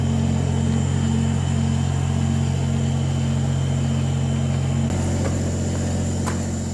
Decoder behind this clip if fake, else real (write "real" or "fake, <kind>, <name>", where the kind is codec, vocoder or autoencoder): real